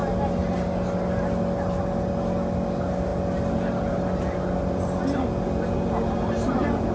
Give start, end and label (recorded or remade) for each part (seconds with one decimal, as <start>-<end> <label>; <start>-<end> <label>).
0.0-6.9 recorded